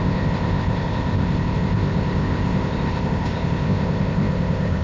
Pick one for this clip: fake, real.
fake